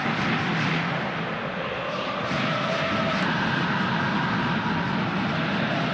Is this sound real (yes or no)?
yes